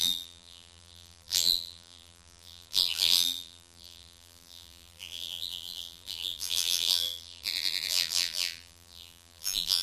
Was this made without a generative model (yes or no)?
no